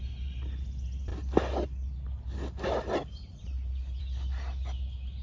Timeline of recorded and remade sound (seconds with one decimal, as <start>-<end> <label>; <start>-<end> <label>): 0.0-5.2 recorded